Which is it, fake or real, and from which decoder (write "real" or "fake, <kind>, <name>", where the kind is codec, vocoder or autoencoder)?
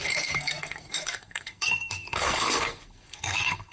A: fake, codec, SNAC